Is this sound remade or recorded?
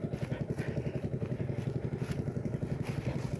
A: recorded